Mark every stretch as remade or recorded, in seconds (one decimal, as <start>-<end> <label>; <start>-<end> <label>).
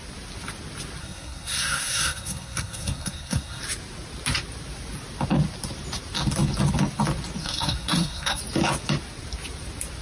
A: 0.0-1.0 recorded; 1.0-3.6 remade; 3.6-7.4 recorded; 7.4-8.4 remade; 8.4-10.0 recorded